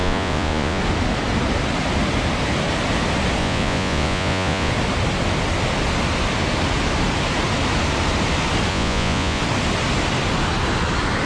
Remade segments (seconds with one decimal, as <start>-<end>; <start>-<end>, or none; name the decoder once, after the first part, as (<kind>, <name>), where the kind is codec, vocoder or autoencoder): 0.0-0.8 (vocoder, Vocos); 3.4-4.7; 8.7-9.4